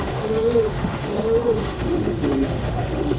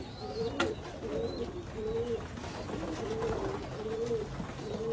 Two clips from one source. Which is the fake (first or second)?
first